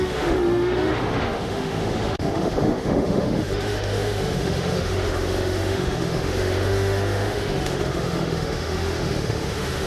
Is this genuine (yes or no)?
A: no